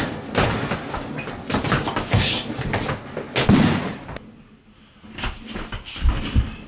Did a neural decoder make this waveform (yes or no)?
no